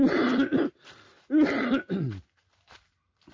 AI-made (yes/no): no